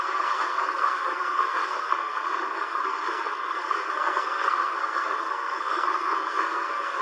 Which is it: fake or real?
fake